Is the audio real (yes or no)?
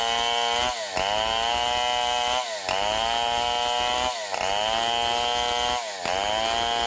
yes